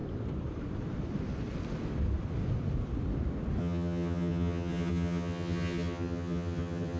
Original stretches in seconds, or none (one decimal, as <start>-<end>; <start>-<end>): 0.0-3.6